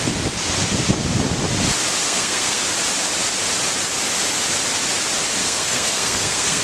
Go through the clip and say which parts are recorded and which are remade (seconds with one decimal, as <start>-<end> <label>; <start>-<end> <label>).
0.0-2.0 recorded; 2.0-2.6 remade; 2.6-5.4 recorded; 5.4-6.6 remade